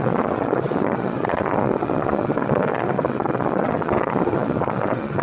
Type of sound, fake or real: fake